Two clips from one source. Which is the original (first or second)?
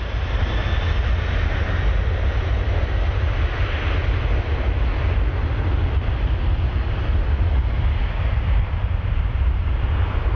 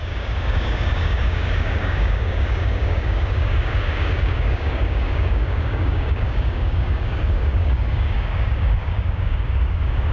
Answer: first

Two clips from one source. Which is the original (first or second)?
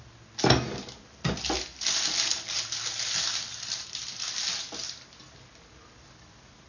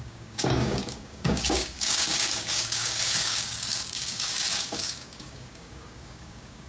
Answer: first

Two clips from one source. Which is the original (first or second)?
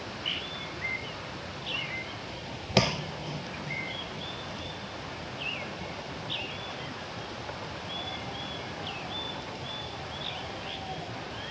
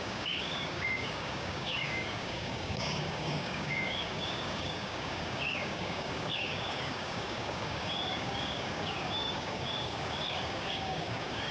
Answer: first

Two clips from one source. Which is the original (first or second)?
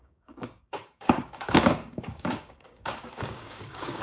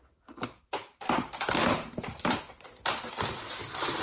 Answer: second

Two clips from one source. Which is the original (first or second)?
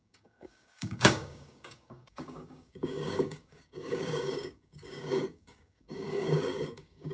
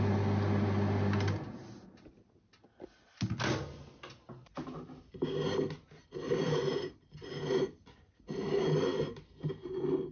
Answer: second